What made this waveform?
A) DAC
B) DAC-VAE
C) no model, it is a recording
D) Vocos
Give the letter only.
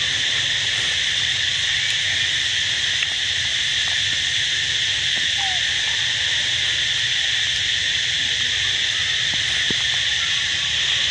C